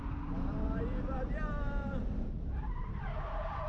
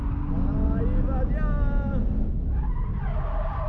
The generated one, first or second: first